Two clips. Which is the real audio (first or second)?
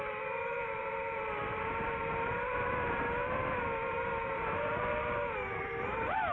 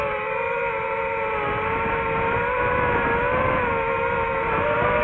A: second